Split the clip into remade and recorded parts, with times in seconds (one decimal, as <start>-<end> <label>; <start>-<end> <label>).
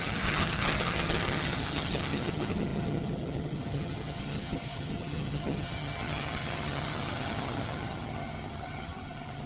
0.0-9.5 remade